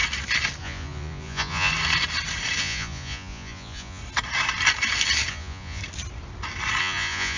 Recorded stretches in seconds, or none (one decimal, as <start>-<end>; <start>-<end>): 0.0-0.6; 1.7-2.6; 4.0-5.3; 5.8-6.8